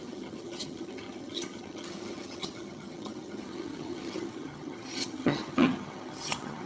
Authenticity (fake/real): fake